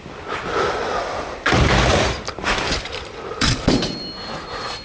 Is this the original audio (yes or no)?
no